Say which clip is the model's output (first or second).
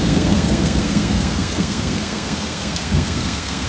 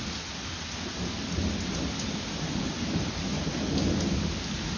first